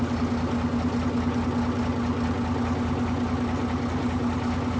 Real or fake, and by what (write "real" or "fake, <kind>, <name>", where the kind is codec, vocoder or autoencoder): real